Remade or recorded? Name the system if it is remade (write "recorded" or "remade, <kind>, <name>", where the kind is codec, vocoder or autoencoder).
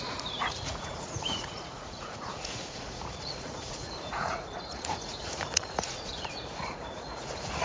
remade, vocoder, Vocos